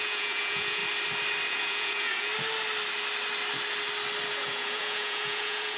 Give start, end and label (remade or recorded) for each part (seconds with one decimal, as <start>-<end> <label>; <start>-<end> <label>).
0.0-0.8 remade; 0.8-1.5 recorded; 1.5-2.3 remade; 2.3-4.3 recorded; 4.3-5.8 remade